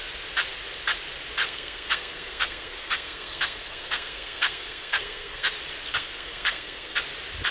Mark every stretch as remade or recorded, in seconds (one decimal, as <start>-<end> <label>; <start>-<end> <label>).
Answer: 0.0-1.4 recorded; 1.4-5.5 remade; 5.5-5.9 recorded; 5.9-7.0 remade; 7.0-7.5 recorded

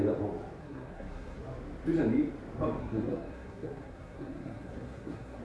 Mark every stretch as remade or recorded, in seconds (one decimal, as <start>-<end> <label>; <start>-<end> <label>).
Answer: 0.0-0.6 recorded; 0.6-1.4 remade; 1.4-2.8 recorded; 2.8-5.4 remade

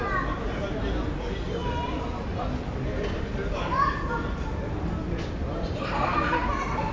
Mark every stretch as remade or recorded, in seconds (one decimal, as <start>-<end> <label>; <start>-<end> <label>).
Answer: 0.0-6.9 recorded